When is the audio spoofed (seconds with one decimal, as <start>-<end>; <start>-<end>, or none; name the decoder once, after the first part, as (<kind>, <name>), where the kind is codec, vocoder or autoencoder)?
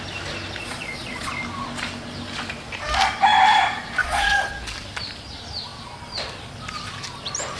0.6-1.3 (vocoder, Vocos); 4.0-4.5